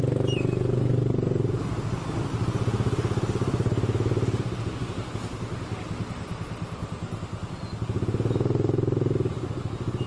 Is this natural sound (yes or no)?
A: yes